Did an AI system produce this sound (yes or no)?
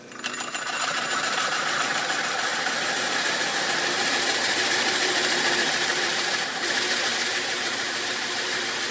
yes